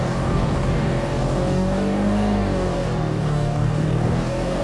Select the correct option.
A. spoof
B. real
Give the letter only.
A